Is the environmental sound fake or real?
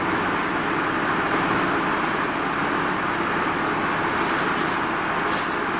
real